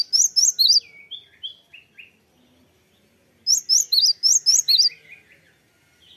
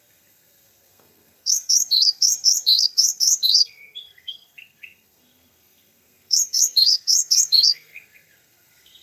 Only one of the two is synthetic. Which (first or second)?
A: second